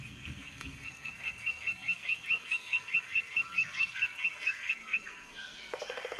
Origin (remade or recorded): remade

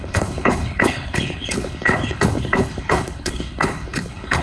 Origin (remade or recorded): remade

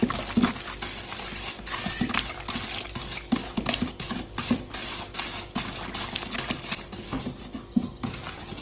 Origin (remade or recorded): recorded